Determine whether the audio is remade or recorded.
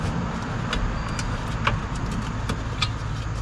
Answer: recorded